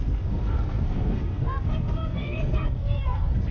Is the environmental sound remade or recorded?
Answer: remade